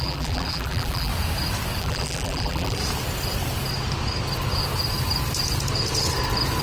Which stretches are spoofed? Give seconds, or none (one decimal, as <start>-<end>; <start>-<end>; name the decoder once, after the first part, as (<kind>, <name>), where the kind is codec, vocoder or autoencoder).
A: 0.0-1.1 (vocoder, BigVGAN v2); 1.8-2.8